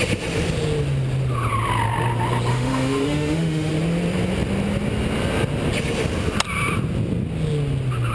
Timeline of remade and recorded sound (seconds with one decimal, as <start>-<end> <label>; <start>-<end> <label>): 0.0-2.5 recorded; 2.5-3.7 remade; 3.7-8.1 recorded